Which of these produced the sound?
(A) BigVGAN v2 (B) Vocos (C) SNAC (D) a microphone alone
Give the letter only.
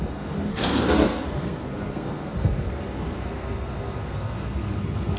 C